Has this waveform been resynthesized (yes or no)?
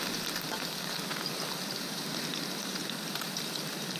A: yes